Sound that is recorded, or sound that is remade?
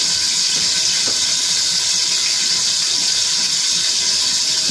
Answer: recorded